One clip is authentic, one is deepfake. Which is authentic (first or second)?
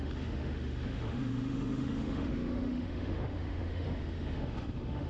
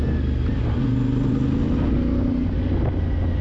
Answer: second